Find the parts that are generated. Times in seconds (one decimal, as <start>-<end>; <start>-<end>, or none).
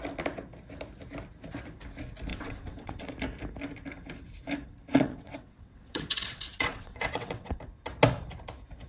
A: 2.3-3.1; 4.9-7.6